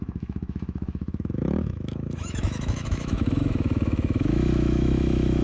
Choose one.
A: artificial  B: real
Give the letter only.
A